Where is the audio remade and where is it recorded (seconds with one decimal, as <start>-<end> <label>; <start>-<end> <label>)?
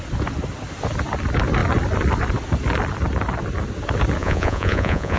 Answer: 0.0-4.2 recorded; 4.2-5.2 remade